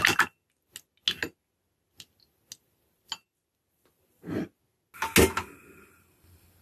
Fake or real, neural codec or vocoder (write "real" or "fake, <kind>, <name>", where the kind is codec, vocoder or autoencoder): real